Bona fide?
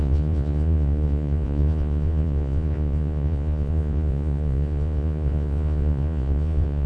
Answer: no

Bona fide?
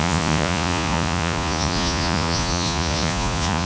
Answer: no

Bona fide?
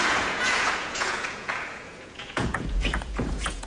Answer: no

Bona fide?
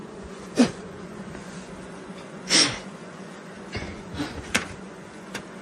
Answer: no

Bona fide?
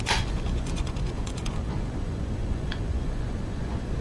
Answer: no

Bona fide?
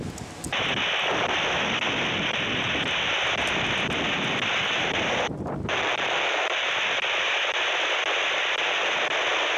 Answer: yes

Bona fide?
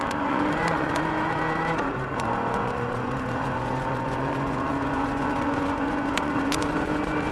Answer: no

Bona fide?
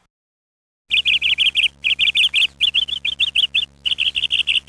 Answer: yes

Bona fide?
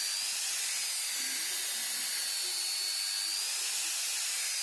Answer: yes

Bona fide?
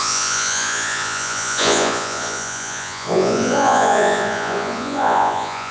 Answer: no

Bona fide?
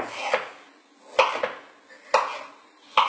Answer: yes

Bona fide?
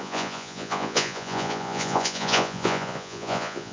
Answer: no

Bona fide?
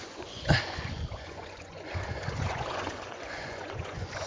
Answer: no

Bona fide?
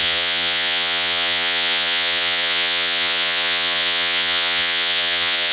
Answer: no